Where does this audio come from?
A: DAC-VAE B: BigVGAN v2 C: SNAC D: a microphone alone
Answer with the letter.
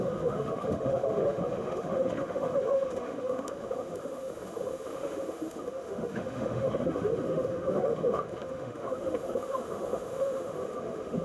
A